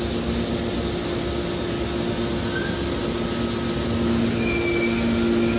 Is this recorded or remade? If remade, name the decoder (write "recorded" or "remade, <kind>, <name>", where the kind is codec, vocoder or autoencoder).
recorded